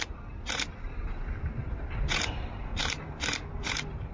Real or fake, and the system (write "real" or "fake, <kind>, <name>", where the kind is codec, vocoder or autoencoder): fake, vocoder, BigVGAN v2